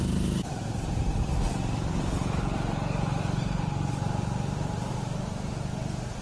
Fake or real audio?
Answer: real